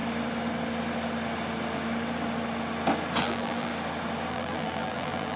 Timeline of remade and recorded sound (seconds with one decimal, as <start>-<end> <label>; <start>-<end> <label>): 0.0-3.2 recorded; 3.2-3.7 remade; 3.7-4.3 recorded; 4.3-5.4 remade